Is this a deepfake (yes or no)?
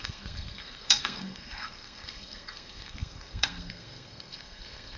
yes